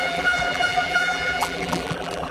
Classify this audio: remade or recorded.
remade